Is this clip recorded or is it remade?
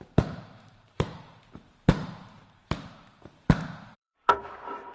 remade